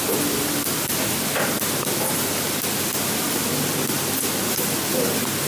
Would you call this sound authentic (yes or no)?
yes